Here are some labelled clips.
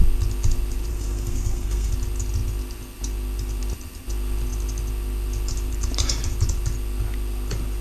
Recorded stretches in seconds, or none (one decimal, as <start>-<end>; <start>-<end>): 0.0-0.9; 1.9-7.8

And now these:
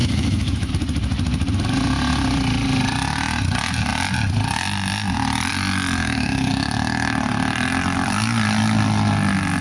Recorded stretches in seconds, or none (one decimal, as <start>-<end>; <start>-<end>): 0.7-6.0; 6.5-9.6

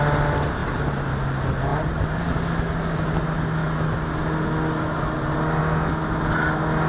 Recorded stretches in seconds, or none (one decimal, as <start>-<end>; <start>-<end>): 0.0-6.9